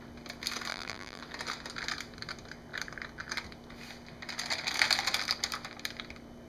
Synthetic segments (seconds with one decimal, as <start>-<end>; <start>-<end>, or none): 0.7-1.2